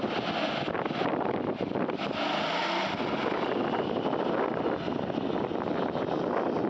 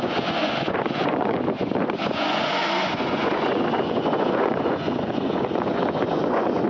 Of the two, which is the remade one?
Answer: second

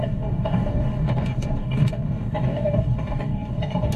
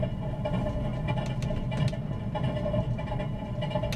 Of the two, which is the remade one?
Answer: first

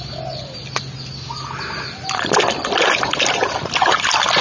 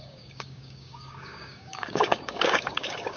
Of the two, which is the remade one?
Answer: second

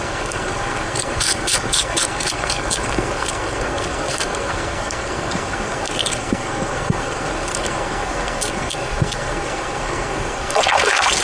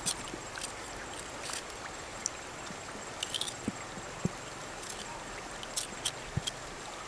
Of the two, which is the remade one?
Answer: first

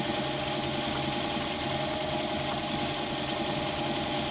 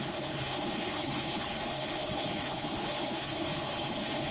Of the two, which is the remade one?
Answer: second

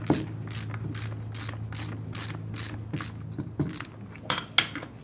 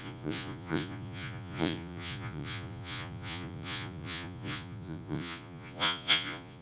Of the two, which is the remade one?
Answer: second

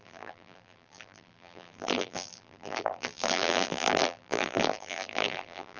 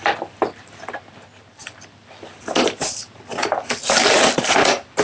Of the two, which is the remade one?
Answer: first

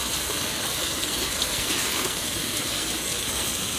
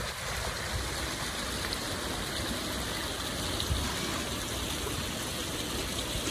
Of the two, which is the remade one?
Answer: first